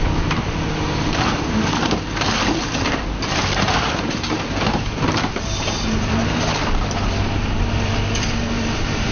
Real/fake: fake